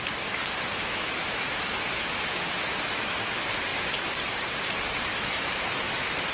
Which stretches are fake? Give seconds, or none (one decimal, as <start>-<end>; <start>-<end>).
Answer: 0.8-3.3; 5.1-6.3